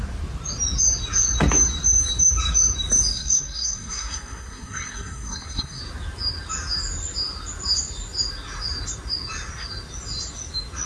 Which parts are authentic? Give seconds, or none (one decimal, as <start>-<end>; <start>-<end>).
0.0-3.1; 5.8-10.9